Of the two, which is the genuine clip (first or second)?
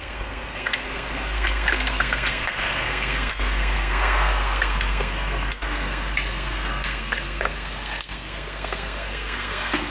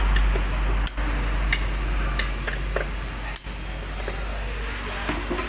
second